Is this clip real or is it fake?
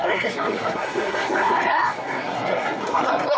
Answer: fake